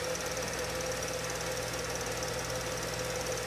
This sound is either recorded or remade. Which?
recorded